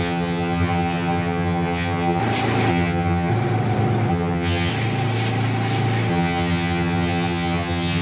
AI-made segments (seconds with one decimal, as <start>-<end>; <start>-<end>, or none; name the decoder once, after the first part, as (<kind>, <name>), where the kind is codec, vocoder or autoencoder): 0.0-2.2 (vocoder, HiFi-GAN); 2.7-3.3; 4.1-4.7; 6.1-8.0

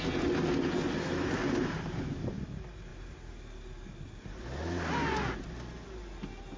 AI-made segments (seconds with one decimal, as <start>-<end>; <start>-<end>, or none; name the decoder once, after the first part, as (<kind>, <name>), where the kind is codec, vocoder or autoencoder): none

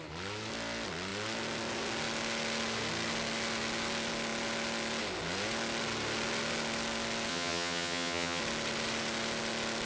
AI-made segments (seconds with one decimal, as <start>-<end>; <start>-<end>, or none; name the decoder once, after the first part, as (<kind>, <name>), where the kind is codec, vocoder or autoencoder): 7.3-8.4 (vocoder, HiFi-GAN)